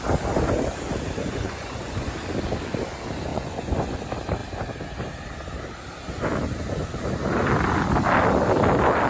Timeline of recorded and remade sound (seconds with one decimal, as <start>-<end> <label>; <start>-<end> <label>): 0.0-1.2 recorded; 1.2-2.1 remade; 2.1-3.3 recorded; 3.3-4.0 remade; 4.0-9.1 recorded